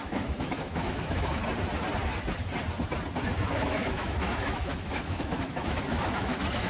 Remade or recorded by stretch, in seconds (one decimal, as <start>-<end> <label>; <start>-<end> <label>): 0.0-1.4 remade; 1.4-3.5 recorded; 3.5-6.7 remade